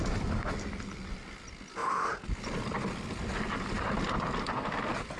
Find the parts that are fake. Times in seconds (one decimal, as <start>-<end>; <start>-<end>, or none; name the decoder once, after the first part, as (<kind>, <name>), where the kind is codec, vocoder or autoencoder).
none